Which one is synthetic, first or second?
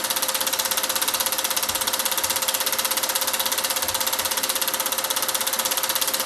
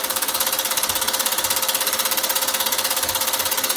second